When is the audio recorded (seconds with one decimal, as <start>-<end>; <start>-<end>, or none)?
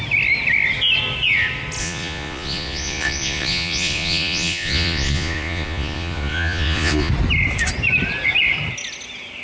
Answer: 0.0-1.8; 7.1-9.4